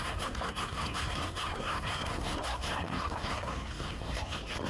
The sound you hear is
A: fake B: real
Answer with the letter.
A